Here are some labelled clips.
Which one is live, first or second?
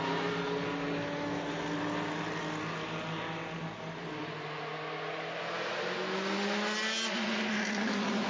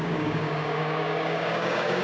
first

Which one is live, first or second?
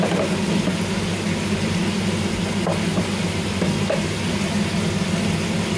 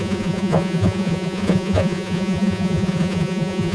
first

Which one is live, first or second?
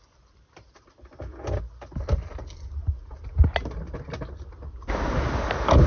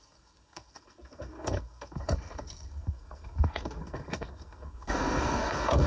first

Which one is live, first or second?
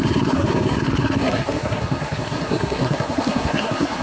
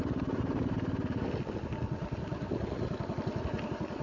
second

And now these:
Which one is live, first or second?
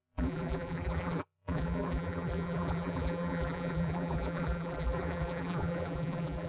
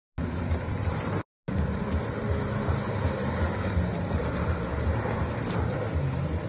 second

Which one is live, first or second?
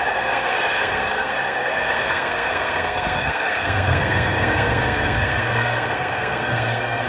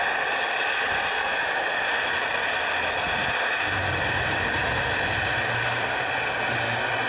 second